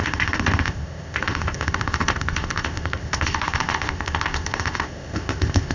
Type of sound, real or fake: fake